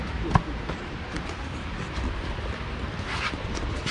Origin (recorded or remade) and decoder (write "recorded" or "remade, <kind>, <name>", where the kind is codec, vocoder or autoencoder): recorded